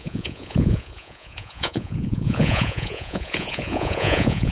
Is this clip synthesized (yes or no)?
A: yes